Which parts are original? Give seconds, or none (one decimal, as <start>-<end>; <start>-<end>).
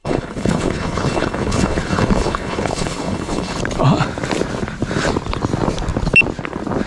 3.6-6.9